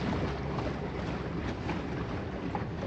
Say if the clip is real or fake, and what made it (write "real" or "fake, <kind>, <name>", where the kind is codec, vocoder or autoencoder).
real